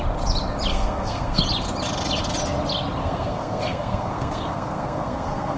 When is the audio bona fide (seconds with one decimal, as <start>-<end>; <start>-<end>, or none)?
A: 0.0-0.7; 1.4-3.0